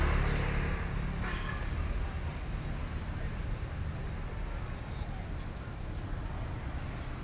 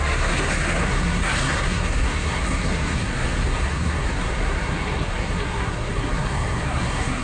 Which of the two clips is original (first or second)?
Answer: first